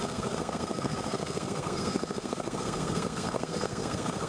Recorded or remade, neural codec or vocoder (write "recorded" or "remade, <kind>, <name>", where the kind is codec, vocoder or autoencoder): remade, codec, SNAC